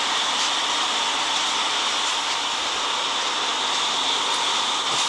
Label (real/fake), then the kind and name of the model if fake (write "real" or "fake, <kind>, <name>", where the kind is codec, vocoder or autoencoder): real